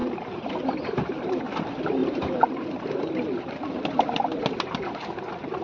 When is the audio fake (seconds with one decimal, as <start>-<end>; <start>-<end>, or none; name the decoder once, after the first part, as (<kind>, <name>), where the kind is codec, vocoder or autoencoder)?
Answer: 0.0-1.4 (vocoder, BigVGAN v2); 2.0-2.7